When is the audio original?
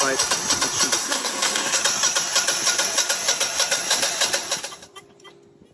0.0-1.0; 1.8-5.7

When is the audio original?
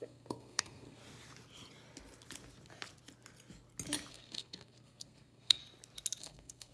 1.0-4.1; 5.6-6.2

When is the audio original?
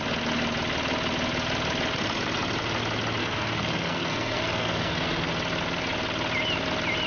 0.0-3.2; 5.3-7.1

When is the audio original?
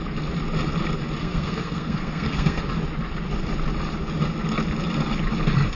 0.0-1.2; 2.6-5.7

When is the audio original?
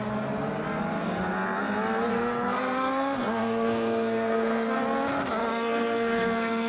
0.0-2.1; 4.8-5.4